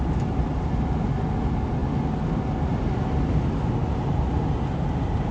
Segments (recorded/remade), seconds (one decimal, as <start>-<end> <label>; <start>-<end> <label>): 0.0-5.3 recorded